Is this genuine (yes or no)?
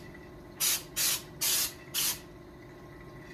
yes